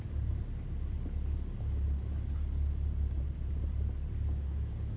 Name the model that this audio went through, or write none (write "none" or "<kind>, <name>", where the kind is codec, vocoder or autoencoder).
none